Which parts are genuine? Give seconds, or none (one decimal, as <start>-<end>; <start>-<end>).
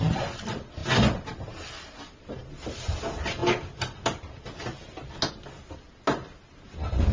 0.0-7.1